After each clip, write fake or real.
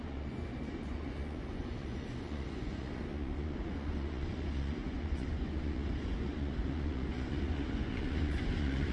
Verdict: fake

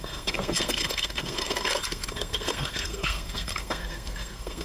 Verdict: fake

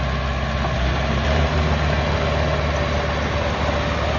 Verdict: real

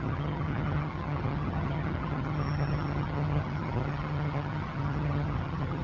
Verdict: fake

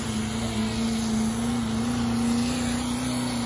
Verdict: real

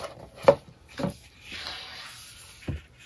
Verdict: real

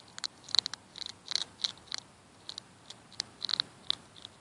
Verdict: real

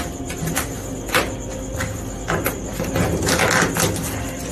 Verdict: real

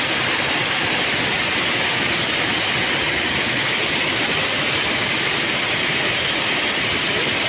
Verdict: real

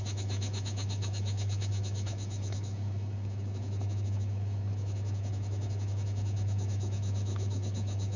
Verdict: fake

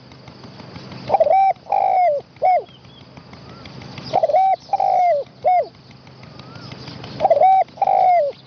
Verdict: real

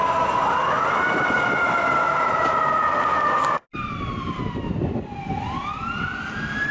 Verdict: real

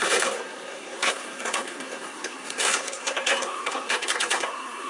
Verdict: fake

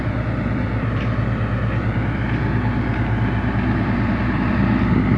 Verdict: fake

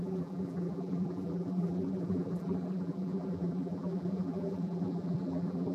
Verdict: fake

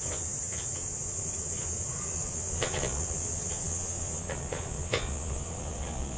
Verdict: fake